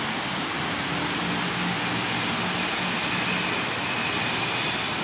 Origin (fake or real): real